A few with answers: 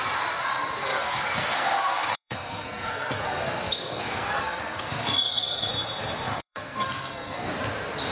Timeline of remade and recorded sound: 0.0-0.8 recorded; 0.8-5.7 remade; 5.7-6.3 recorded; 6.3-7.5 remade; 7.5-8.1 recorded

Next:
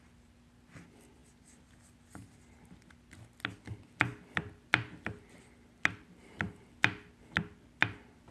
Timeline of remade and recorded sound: 0.0-8.3 recorded